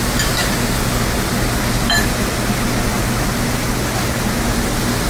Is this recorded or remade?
recorded